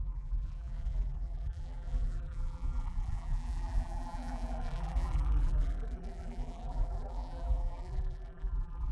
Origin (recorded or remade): remade